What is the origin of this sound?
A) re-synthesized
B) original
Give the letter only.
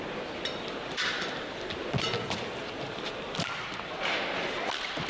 B